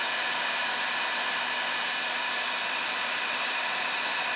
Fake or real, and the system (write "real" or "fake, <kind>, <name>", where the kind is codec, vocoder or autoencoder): real